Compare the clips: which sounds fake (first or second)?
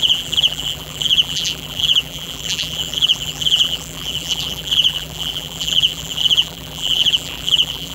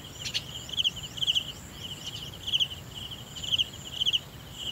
first